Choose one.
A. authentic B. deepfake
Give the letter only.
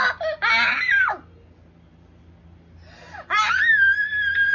A